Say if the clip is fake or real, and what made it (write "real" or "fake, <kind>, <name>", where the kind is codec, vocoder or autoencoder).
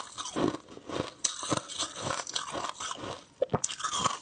real